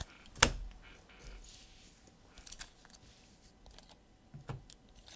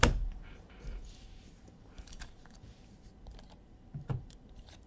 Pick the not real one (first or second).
second